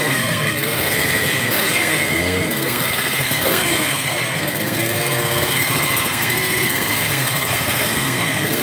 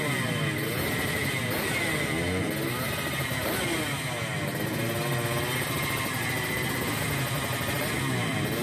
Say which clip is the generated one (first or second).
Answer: first